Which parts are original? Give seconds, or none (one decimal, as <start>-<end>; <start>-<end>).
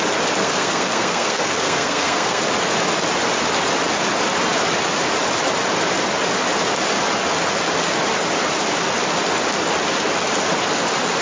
0.0-0.4; 2.4-11.2